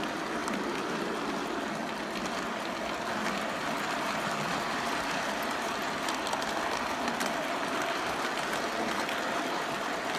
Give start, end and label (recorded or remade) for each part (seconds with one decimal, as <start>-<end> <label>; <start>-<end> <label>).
0.0-10.2 recorded